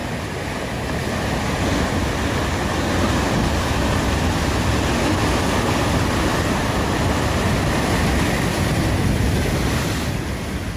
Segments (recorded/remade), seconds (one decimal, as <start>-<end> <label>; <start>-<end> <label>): 0.0-10.8 recorded